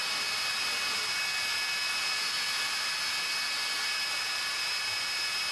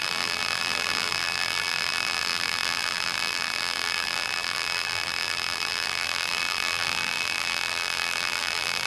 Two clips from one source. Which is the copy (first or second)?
second